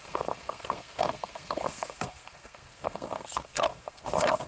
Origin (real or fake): fake